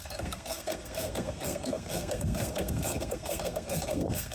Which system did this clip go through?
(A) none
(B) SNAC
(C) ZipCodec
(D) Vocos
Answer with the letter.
B